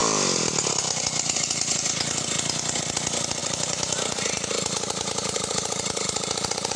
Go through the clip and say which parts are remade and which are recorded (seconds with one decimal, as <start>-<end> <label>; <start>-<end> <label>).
0.0-3.4 recorded; 3.4-6.8 remade

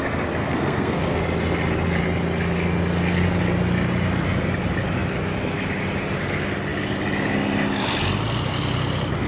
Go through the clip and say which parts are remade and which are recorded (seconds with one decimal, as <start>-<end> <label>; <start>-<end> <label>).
0.0-0.4 recorded; 0.4-1.2 remade; 1.2-9.3 recorded

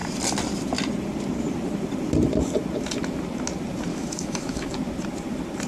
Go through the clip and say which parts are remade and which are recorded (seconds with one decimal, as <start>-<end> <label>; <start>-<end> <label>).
0.0-3.9 recorded; 3.9-4.7 remade; 4.7-5.7 recorded

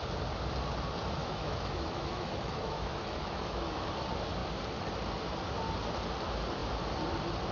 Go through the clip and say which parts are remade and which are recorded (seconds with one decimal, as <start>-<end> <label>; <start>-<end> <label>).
0.0-1.2 recorded; 1.2-3.9 remade; 3.9-7.5 recorded

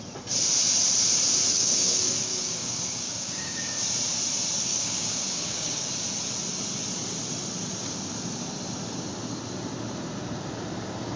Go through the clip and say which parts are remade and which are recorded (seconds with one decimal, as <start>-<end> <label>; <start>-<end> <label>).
0.0-1.5 recorded; 1.5-3.6 remade; 3.6-4.7 recorded; 4.7-5.9 remade; 5.9-11.2 recorded

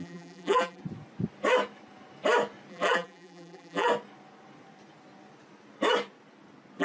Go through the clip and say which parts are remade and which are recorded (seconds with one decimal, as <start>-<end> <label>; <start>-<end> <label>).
0.0-0.8 remade; 0.8-2.7 recorded; 2.7-3.9 remade; 3.9-6.8 recorded

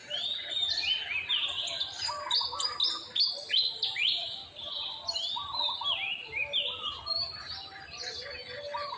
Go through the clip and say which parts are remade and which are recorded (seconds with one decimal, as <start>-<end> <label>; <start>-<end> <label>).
0.0-0.7 remade; 0.7-9.0 recorded